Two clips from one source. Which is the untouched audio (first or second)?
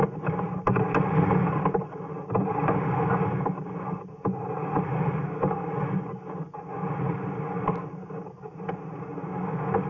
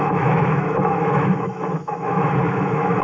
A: first